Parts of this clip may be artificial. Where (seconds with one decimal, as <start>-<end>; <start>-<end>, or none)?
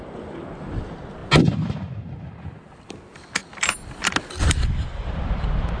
none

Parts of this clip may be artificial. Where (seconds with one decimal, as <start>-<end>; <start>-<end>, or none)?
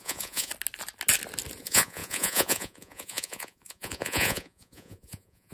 0.0-0.5; 1.6-5.5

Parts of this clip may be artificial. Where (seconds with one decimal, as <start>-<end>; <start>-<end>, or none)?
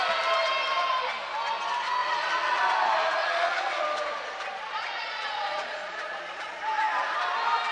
2.0-2.6; 3.2-3.8; 4.5-6.6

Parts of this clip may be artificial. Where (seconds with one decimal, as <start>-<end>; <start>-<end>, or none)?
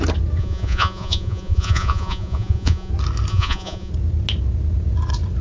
0.4-2.9; 3.3-3.9